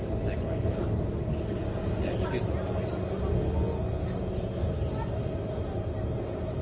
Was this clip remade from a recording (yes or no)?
no